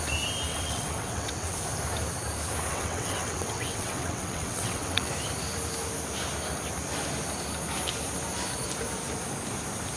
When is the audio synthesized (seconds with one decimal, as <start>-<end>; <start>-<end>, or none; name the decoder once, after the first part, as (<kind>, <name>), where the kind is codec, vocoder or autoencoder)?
0.5-1.6 (vocoder, WaveNeXt); 2.7-5.1